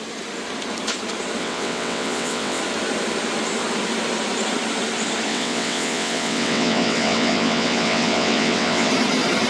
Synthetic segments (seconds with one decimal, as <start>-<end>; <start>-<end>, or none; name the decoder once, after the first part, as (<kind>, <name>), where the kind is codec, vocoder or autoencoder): 1.4-2.6 (vocoder, WaveNeXt); 5.3-8.9